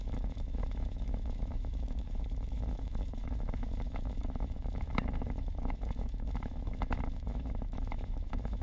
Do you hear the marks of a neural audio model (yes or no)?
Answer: yes